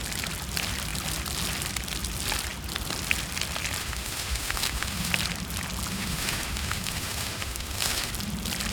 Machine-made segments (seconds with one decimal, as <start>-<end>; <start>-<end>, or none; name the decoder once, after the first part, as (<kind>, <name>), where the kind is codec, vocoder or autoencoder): 3.8-5.1 (autoencoder, DAC-VAE); 5.9-8.1